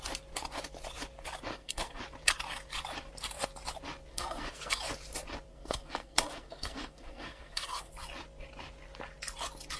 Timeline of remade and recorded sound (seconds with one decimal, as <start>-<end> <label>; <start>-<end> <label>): 0.0-1.5 recorded; 1.5-2.0 remade; 2.0-4.1 recorded; 4.1-4.8 remade; 4.8-5.5 recorded; 5.5-7.9 remade; 7.9-9.8 recorded